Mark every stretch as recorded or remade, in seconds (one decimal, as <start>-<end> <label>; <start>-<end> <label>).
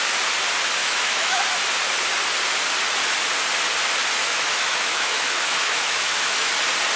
0.0-0.8 recorded; 0.8-1.4 remade; 1.4-4.2 recorded; 4.2-6.5 remade; 6.5-7.0 recorded